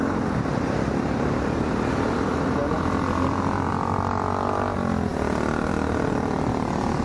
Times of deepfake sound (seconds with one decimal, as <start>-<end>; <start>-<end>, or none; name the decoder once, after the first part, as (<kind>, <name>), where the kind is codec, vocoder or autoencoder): none